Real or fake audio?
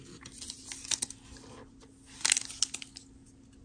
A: real